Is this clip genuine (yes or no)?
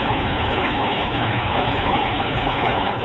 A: no